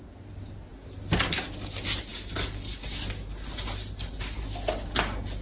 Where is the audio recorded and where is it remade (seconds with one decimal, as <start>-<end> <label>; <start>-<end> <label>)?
0.0-5.4 recorded